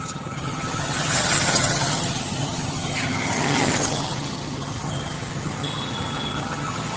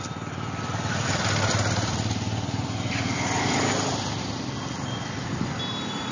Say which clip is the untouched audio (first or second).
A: second